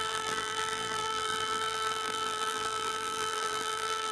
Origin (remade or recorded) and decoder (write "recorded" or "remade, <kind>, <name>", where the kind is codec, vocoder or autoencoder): remade, vocoder, BigVGAN v2